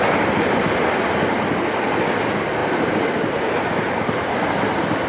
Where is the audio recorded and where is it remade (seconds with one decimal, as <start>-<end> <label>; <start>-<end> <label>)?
0.0-2.6 recorded; 2.6-5.1 remade